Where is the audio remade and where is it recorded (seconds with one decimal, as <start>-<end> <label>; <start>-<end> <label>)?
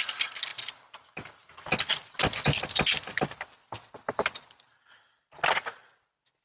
0.0-6.4 recorded